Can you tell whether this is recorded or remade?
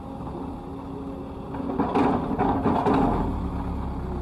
recorded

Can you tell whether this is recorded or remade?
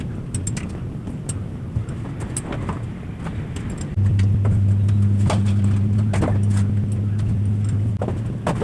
recorded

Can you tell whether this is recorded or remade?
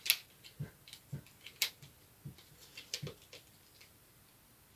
recorded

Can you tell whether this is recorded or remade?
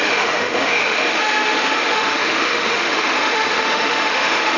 remade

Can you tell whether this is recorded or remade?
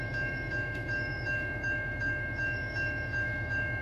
remade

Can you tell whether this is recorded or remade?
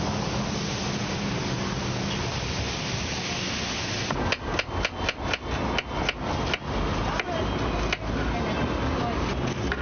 recorded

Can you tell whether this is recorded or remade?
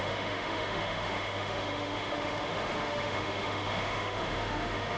remade